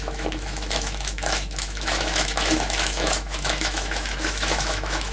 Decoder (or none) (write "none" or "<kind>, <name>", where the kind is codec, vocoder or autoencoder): autoencoder, DAC-VAE